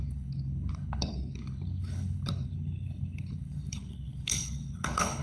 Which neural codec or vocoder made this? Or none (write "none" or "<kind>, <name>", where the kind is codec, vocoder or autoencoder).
codec, HILCodec